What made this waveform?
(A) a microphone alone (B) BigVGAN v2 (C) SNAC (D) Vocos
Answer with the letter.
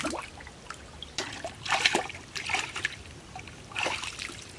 B